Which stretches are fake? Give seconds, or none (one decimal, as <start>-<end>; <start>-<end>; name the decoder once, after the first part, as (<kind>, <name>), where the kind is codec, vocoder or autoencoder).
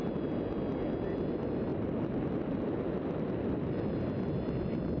none